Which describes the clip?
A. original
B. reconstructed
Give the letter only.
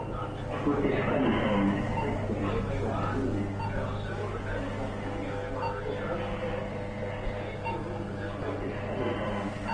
A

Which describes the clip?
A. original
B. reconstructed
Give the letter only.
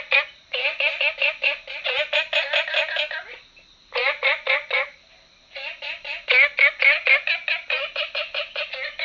A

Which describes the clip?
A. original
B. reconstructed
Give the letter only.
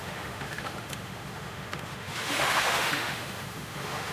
B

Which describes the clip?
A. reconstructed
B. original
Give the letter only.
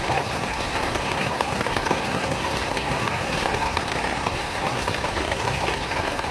A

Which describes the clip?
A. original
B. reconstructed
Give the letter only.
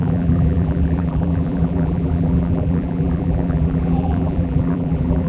B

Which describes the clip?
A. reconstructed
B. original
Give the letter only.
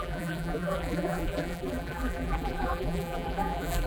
A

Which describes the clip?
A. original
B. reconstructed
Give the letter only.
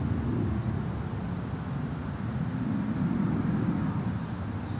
A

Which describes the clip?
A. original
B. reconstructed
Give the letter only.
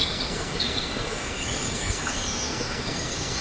B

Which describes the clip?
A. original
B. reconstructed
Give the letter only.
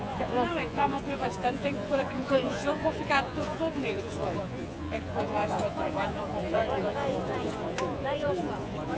B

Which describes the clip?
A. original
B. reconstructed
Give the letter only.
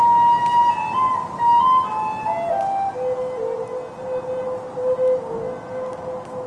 A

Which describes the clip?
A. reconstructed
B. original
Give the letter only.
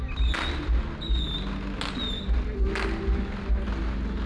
B